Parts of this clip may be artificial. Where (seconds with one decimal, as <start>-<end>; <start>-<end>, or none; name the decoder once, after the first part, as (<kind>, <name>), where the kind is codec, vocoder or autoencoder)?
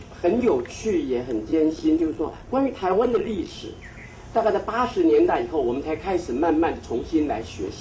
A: 1.5-3.6 (vocoder, Vocos)